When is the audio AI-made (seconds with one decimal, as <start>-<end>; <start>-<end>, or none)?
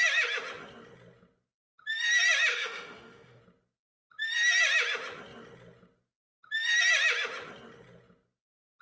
2.5-3.4